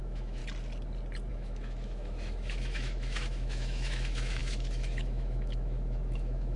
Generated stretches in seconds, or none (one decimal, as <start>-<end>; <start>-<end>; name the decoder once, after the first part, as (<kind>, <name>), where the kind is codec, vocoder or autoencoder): 0.0-0.4 (autoencoder, DAC-VAE); 1.3-6.6